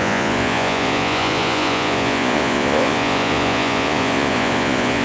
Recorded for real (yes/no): no